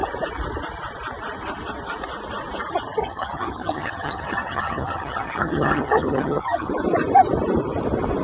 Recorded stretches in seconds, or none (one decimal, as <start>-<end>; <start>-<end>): 0.0-3.0; 6.7-8.2